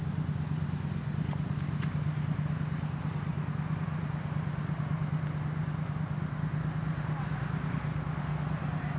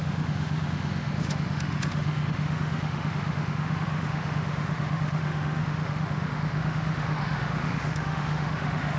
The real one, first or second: first